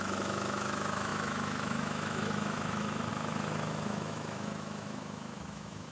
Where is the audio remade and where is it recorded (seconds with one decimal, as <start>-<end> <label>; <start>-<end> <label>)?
0.0-5.9 remade